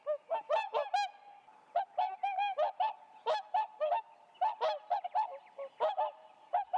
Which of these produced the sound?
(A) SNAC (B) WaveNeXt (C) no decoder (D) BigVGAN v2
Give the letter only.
C